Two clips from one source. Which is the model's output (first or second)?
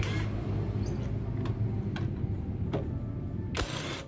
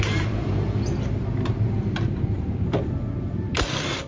second